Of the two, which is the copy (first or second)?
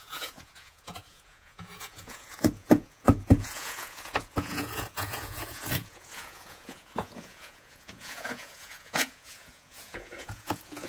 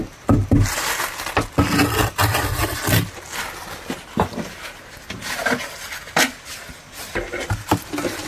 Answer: first